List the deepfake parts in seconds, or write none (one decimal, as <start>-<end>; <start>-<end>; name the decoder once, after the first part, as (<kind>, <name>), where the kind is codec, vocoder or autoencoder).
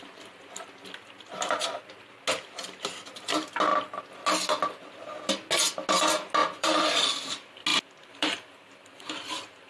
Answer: 6.4-7.3 (vocoder, BigVGAN v2); 7.7-9.7